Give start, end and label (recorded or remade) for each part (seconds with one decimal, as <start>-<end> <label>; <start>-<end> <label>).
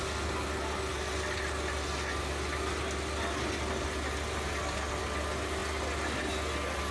0.0-6.9 recorded